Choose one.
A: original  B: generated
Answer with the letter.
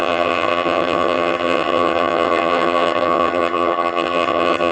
B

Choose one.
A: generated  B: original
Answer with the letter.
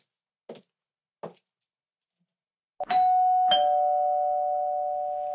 B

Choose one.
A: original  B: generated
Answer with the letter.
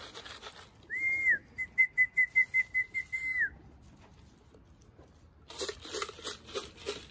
A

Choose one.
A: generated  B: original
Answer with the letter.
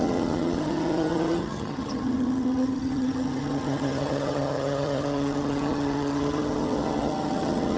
A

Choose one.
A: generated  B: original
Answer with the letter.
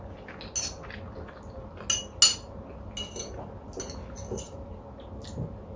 B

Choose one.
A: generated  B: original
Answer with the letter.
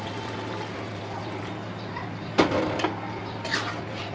B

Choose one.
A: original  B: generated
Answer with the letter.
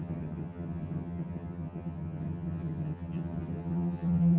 B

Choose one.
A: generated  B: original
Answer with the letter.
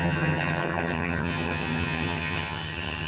A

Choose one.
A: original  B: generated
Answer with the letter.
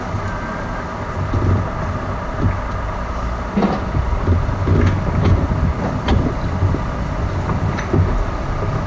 A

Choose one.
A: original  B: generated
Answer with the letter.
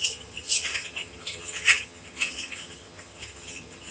B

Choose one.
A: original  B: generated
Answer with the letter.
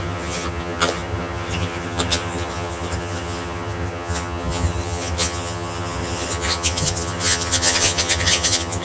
B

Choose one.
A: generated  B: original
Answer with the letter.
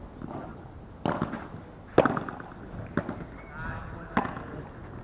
B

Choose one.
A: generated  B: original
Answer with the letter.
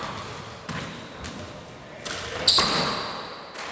B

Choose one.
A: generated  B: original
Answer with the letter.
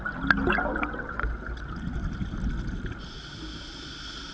B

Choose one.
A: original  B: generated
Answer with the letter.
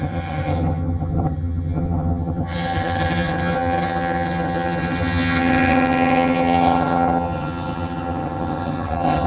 B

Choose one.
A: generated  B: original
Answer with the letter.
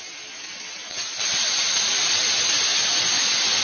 B